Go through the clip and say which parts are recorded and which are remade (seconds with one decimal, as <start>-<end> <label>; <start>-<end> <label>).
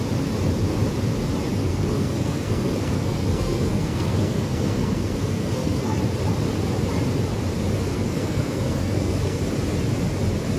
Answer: 0.0-1.5 recorded; 1.5-6.0 remade; 6.0-7.9 recorded; 7.9-9.4 remade; 9.4-10.6 recorded